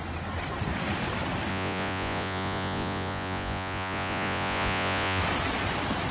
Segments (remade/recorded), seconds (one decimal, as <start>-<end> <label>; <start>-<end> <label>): 0.0-1.5 recorded; 1.5-5.2 remade; 5.2-6.1 recorded